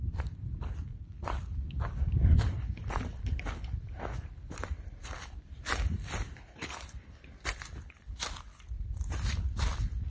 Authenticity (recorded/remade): remade